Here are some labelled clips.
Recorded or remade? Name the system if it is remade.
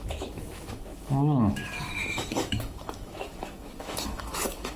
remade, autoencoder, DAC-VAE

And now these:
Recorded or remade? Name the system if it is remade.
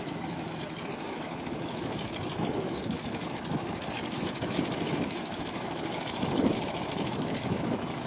remade, autoencoder, DAC-VAE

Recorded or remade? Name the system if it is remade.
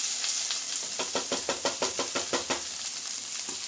recorded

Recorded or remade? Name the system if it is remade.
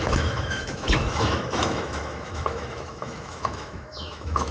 remade, autoencoder, DAC-VAE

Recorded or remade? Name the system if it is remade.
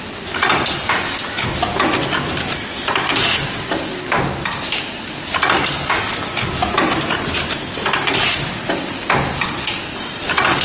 recorded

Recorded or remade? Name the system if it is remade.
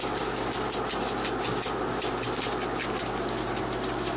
recorded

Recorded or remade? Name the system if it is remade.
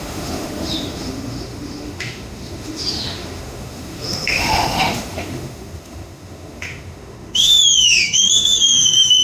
remade, autoencoder, DAC-VAE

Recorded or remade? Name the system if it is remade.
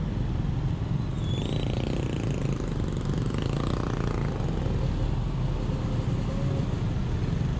recorded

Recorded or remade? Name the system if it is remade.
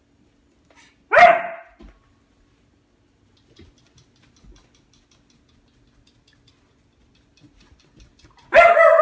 recorded